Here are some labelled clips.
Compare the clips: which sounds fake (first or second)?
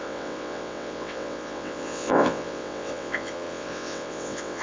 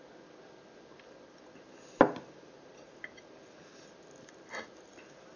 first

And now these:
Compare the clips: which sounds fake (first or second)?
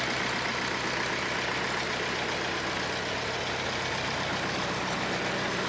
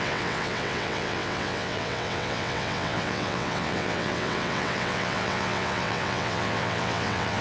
second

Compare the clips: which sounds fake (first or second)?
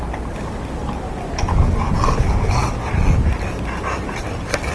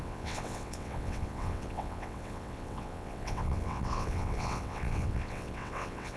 second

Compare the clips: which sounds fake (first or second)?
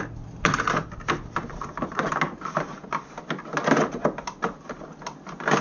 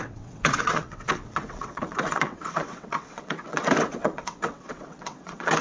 second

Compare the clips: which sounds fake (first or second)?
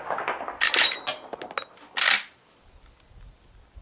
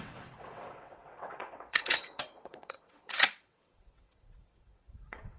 second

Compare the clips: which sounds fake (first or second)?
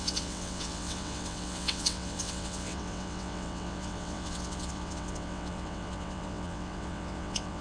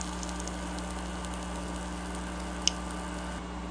first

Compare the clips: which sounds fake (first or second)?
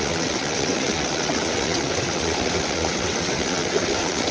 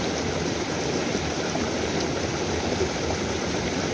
first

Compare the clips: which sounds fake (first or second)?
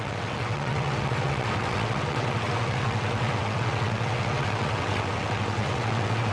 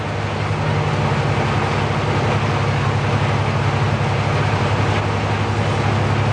first